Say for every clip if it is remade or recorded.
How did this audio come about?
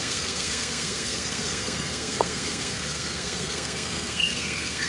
remade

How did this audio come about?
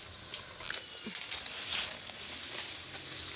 recorded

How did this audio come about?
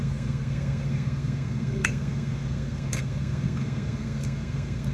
remade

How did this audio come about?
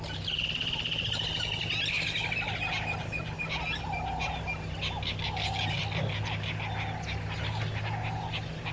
recorded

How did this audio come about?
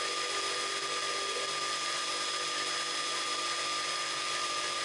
recorded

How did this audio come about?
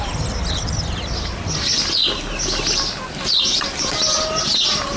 recorded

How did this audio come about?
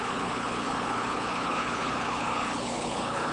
remade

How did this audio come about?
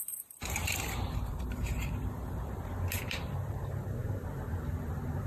remade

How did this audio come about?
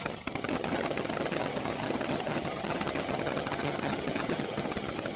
remade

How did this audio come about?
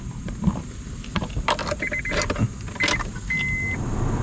recorded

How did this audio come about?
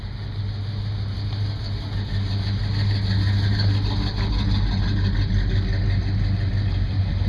recorded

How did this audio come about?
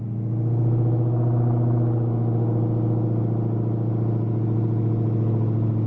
recorded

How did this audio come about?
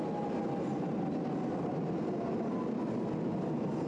recorded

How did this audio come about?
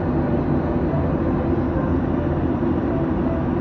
recorded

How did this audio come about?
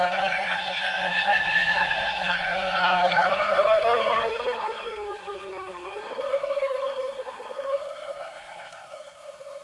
remade